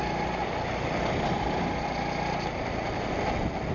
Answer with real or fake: real